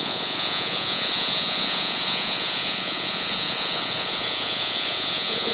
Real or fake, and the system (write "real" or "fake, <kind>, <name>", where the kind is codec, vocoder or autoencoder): fake, vocoder, Vocos